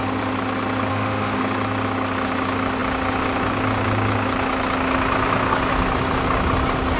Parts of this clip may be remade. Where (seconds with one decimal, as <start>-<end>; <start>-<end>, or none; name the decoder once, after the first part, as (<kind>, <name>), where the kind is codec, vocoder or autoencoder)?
0.9-1.4 (autoencoder, DAC-VAE)